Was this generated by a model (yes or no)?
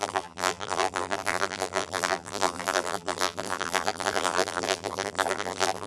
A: yes